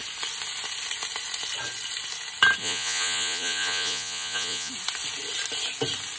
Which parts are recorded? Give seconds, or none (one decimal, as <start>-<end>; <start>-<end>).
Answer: 0.0-2.6; 4.7-6.2